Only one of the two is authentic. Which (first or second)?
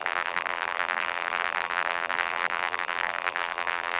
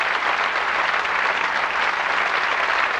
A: second